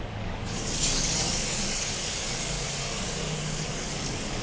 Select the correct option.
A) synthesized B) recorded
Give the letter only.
A